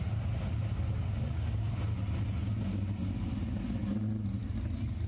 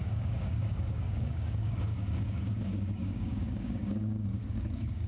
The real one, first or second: first